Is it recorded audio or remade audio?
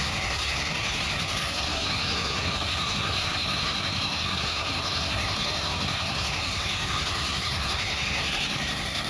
remade